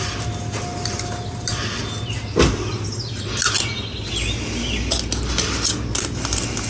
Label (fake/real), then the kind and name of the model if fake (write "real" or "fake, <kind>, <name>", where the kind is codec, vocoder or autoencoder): real